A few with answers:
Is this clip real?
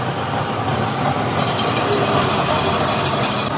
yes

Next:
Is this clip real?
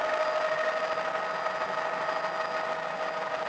yes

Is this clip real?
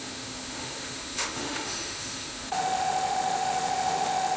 no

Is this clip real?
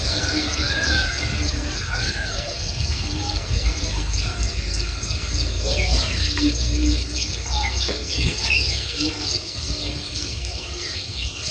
no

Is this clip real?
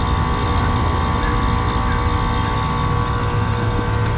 yes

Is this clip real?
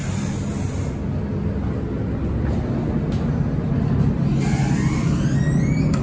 yes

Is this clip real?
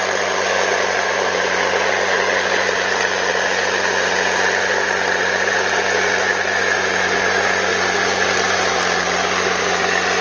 yes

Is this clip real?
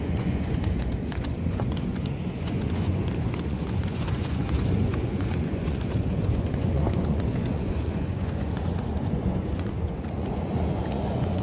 no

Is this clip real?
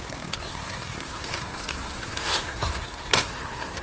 no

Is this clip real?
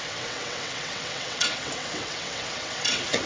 no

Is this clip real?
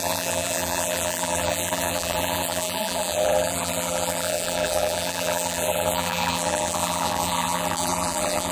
no